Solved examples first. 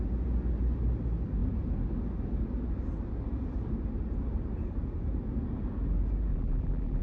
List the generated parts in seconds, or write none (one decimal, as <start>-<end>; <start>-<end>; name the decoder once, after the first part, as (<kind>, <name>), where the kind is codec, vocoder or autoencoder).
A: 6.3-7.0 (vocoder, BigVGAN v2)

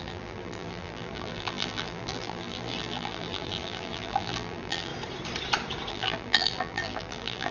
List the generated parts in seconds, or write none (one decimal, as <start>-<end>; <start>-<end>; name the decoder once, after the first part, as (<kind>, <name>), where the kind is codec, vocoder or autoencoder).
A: 0.0-4.9 (vocoder, BigVGAN v2); 5.9-7.5

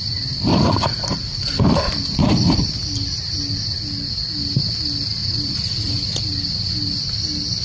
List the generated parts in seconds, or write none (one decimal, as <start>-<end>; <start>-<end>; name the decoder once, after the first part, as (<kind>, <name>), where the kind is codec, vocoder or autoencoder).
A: 0.5-1.5 (vocoder, Vocos); 5.2-6.2

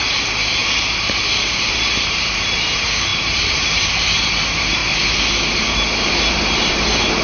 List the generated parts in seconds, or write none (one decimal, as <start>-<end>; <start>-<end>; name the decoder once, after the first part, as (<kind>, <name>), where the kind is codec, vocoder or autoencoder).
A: 0.0-4.8 (vocoder, BigVGAN v2); 6.3-7.2